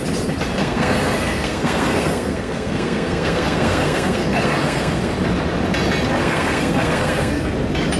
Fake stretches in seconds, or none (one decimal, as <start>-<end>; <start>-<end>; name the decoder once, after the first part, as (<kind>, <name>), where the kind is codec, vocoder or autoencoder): 0.6-5.1 (codec, SNAC); 6.2-7.5